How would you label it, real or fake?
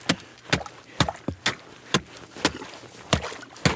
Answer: real